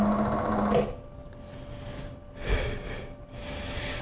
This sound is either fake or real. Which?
real